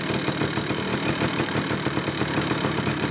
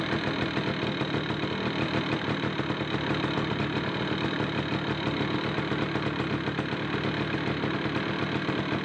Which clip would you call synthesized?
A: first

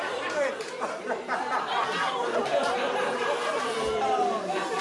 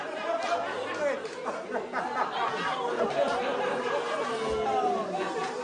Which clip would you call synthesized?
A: first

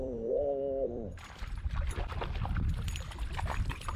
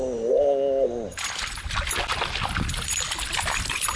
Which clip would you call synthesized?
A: first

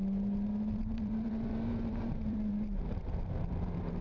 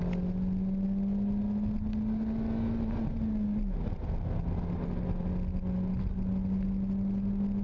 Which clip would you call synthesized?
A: first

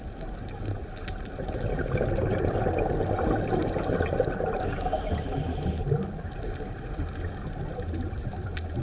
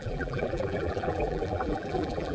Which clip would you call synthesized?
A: second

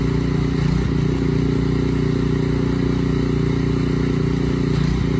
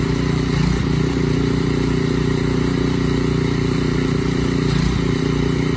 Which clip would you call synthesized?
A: second